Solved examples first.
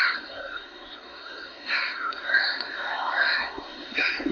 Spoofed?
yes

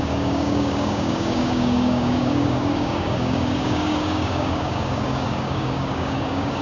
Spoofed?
yes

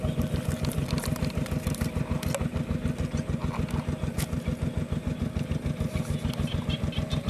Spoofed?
no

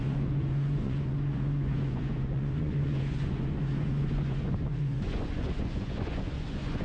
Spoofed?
yes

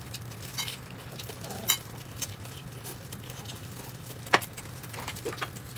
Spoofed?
no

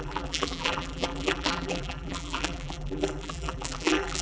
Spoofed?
yes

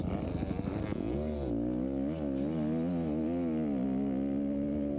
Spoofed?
no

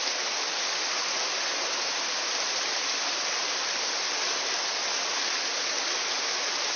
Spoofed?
no